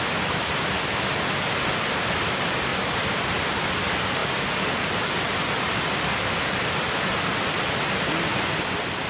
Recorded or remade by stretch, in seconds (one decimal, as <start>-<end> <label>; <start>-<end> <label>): 0.0-2.7 recorded; 2.7-3.6 remade; 3.6-9.1 recorded